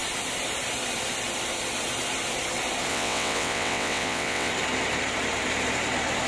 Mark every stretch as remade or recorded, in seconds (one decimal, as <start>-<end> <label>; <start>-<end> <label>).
0.0-2.9 recorded; 2.9-4.5 remade; 4.5-6.3 recorded